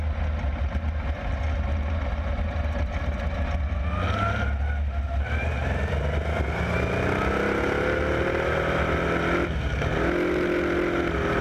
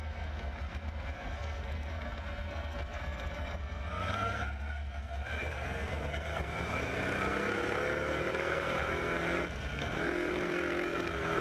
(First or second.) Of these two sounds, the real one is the first